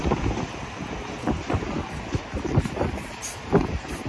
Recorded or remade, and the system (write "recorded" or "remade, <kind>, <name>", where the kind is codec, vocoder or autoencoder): recorded